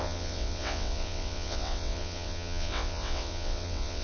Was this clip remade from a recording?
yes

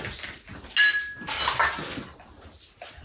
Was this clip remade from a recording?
no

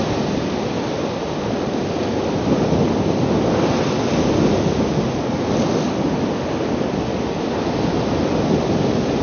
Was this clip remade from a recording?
no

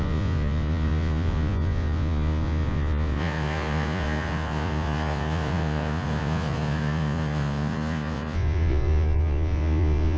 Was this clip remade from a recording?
yes